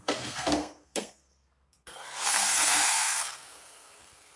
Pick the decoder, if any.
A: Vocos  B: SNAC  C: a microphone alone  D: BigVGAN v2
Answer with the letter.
B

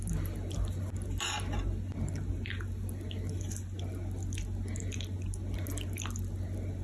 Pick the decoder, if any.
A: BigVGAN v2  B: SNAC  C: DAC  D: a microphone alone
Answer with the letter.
D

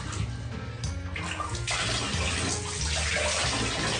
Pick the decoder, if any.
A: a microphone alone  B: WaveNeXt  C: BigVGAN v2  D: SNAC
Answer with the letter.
A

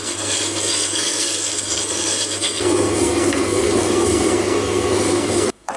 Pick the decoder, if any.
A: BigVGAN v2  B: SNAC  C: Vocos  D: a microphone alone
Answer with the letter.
B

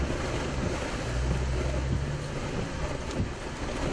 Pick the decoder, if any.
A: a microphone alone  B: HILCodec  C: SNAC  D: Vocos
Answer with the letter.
A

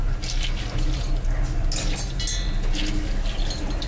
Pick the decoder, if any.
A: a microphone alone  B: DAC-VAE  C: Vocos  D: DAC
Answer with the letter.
A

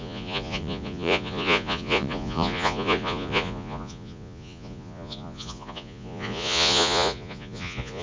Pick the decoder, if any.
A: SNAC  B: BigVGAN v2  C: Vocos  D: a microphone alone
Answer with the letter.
C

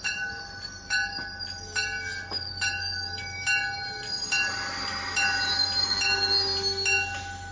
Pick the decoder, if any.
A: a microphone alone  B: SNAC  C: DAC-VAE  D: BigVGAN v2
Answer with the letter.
A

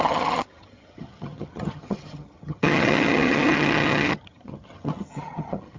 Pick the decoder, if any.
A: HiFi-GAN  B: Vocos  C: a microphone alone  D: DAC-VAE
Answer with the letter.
A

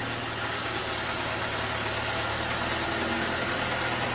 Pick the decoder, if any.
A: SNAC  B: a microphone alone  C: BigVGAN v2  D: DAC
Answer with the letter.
B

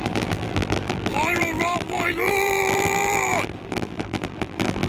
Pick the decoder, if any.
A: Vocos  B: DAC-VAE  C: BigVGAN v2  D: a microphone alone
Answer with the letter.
C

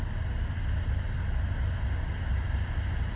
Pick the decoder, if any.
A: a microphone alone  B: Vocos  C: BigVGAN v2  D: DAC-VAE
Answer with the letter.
A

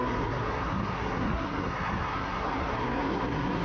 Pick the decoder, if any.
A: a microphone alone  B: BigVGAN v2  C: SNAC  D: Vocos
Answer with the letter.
C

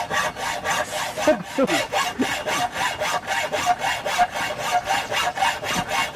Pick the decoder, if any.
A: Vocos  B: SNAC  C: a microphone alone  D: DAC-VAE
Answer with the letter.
C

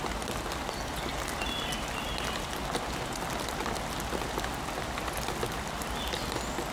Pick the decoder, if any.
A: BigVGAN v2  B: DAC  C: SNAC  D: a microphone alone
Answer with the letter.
D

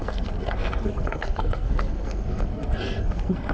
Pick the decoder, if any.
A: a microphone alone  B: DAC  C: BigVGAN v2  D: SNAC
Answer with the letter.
D